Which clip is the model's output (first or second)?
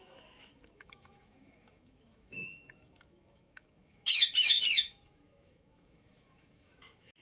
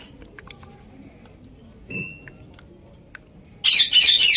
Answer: first